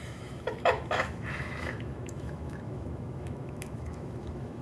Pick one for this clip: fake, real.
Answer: fake